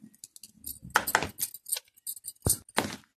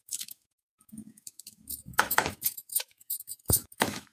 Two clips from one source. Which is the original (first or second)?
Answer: first